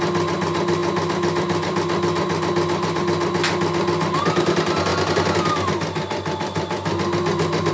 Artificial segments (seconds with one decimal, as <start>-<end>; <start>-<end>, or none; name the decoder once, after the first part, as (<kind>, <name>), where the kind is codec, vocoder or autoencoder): none